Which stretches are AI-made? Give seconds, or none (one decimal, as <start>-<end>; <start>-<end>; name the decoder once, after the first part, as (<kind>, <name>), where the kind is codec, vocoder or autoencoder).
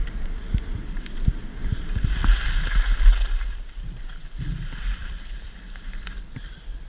5.0-5.6 (vocoder, BigVGAN v2)